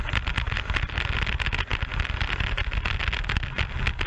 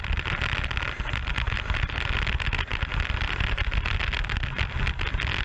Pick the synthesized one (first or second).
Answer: second